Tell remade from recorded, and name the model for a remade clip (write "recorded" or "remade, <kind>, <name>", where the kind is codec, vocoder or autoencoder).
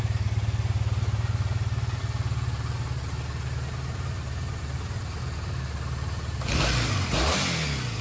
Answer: recorded